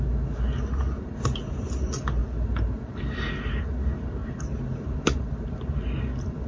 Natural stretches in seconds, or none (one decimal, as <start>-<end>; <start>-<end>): 0.0-6.5